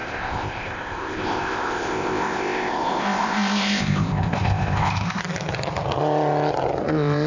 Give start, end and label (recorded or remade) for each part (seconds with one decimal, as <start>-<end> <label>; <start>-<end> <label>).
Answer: 0.0-5.2 remade; 5.2-6.8 recorded; 6.8-7.3 remade